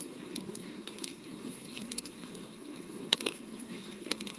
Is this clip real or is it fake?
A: fake